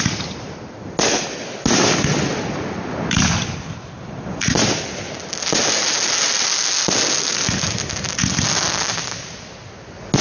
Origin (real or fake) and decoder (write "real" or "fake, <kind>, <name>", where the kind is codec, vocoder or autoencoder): real